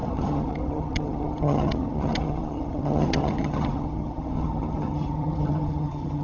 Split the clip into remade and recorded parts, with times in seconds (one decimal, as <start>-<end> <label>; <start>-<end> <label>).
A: 0.0-6.2 remade